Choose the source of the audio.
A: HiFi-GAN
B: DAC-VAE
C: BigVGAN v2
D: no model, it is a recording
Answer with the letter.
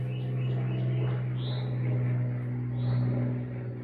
D